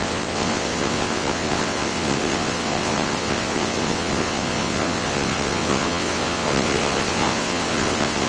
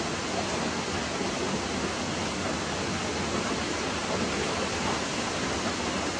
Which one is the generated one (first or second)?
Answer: first